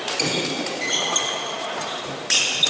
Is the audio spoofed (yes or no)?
no